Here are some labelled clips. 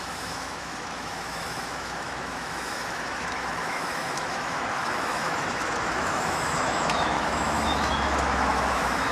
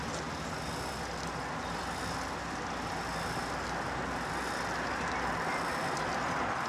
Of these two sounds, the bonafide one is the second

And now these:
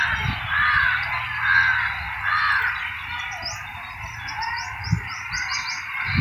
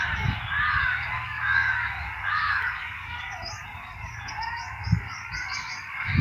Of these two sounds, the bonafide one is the first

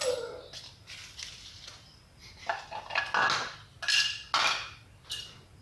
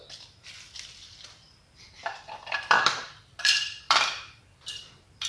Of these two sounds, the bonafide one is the first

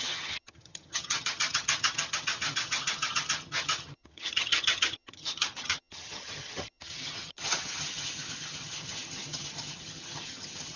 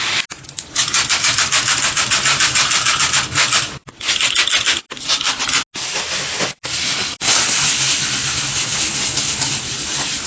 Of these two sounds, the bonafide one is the second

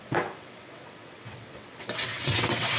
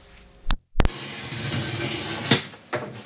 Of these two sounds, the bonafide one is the second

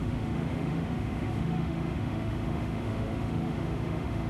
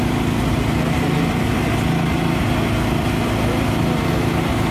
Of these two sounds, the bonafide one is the second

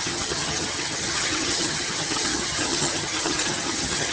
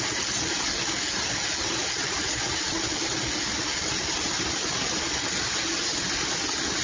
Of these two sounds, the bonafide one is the second